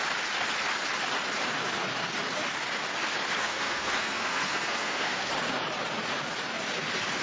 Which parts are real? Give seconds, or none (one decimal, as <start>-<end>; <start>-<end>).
0.0-3.4; 5.3-7.2